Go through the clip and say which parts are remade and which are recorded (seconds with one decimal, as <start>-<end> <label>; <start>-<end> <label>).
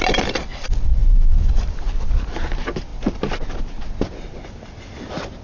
0.0-5.4 recorded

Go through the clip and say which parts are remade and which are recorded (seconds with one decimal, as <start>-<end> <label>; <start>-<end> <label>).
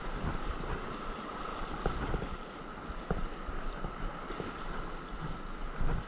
0.0-6.1 recorded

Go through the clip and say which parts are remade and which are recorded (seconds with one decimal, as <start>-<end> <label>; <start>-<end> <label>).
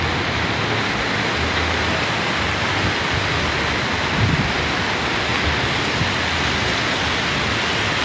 0.0-8.0 recorded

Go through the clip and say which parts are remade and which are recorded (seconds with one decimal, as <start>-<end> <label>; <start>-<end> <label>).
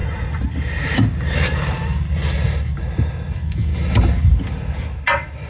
0.0-3.3 recorded; 3.3-3.7 remade; 3.7-5.5 recorded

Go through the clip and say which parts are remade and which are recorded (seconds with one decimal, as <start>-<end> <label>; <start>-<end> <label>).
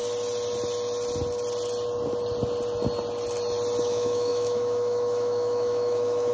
0.0-3.8 recorded; 3.8-6.3 remade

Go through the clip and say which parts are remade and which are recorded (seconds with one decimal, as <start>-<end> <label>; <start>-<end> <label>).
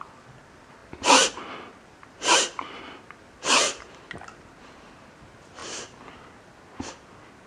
0.0-7.5 recorded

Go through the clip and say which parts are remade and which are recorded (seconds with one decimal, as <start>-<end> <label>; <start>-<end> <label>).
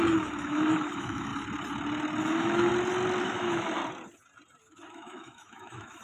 0.0-1.3 remade; 1.3-2.2 recorded; 2.2-2.7 remade; 2.7-3.2 recorded; 3.2-3.8 remade; 3.8-4.6 recorded; 4.6-6.0 remade